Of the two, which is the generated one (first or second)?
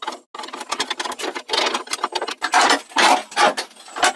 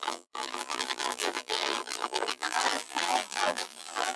second